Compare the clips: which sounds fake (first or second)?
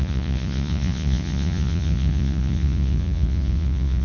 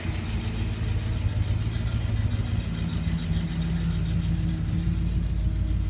first